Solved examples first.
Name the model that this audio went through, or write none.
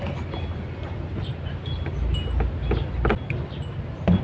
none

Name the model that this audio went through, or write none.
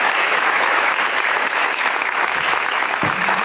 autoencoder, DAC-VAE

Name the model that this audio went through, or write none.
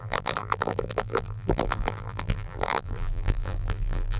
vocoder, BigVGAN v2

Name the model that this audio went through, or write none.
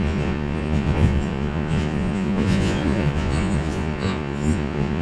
vocoder, Vocos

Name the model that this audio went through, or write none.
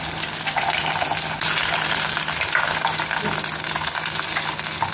none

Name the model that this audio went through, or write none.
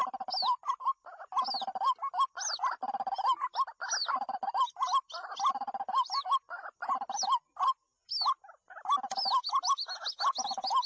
none